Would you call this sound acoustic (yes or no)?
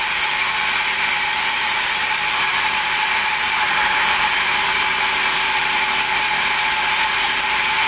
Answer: no